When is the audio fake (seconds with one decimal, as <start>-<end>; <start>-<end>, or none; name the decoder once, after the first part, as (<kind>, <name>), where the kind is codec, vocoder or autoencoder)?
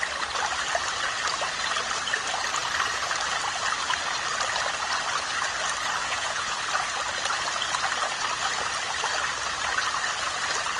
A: 6.0-6.6 (vocoder, Vocos)